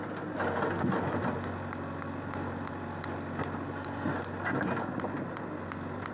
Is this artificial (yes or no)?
no